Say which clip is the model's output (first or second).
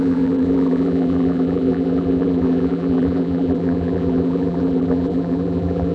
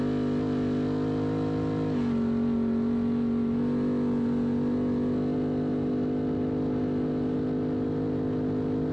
first